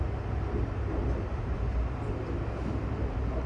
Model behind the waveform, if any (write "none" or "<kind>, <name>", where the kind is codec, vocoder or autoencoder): none